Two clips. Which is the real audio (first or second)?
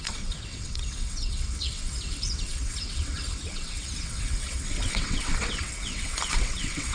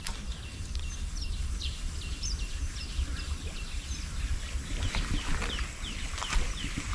second